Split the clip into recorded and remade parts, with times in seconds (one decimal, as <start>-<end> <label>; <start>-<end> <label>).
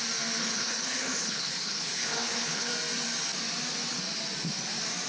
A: 0.0-0.4 recorded; 0.4-2.7 remade; 2.7-5.1 recorded